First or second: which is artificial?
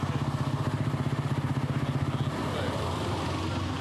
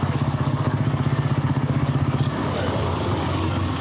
second